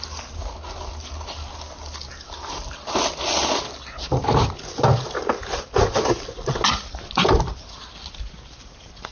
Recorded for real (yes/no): yes